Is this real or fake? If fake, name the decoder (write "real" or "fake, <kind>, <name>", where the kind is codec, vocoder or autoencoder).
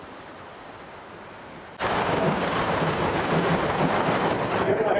real